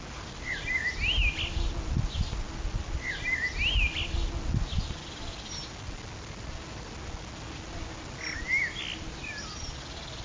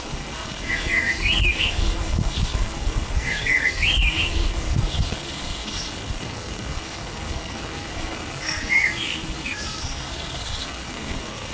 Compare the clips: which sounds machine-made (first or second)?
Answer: second